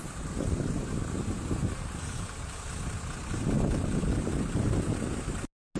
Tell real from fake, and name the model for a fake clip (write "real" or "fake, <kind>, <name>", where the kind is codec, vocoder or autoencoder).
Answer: real